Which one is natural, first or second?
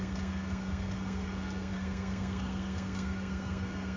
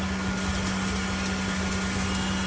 second